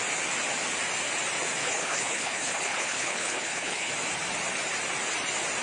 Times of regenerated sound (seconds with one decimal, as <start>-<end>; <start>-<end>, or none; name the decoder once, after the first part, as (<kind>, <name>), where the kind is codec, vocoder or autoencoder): 1.6-3.9 (codec, HILCodec)